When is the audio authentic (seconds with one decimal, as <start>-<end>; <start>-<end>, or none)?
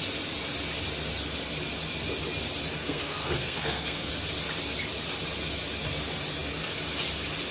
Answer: 0.0-2.8; 4.1-7.5